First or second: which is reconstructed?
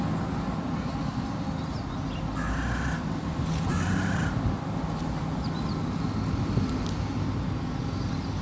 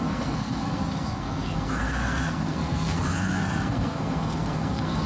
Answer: second